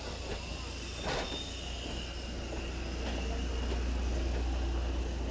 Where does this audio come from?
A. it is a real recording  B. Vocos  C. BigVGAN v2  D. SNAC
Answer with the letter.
A